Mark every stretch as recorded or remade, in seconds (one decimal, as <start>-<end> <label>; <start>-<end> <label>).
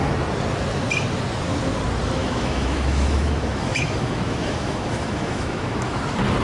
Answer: 0.0-2.2 recorded; 2.2-6.0 remade; 6.0-6.4 recorded